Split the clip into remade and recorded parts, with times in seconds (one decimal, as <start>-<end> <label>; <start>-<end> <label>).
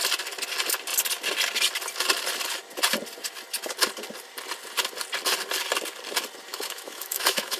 0.0-6.5 recorded; 6.5-7.6 remade